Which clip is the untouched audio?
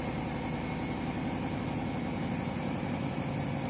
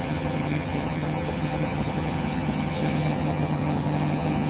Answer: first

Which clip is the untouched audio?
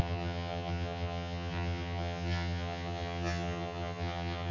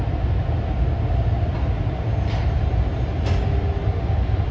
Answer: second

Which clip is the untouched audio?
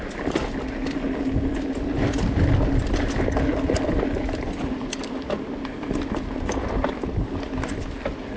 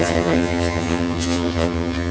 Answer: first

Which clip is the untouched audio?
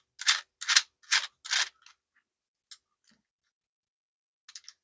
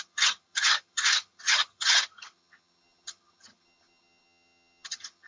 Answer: first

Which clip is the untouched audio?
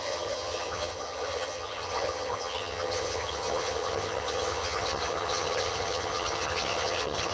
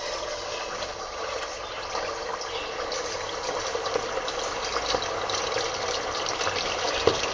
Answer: second